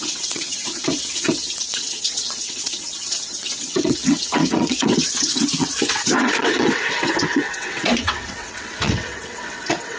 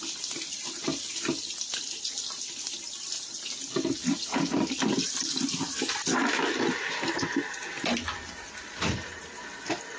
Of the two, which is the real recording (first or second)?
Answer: second